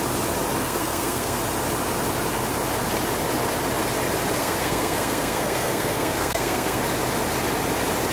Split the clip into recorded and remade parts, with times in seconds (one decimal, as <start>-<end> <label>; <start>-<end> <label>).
0.0-0.6 recorded; 0.6-1.4 remade; 1.4-4.4 recorded; 4.4-6.8 remade; 6.8-8.1 recorded